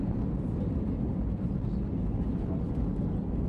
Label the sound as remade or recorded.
recorded